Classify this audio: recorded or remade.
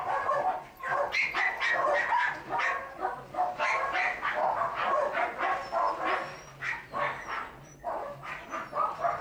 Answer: recorded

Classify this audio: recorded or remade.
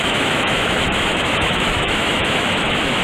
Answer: remade